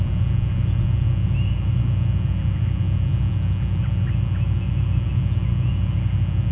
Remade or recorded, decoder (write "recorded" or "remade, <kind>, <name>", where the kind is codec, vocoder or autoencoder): recorded